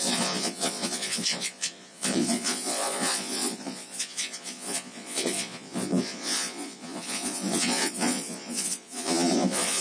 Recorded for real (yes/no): no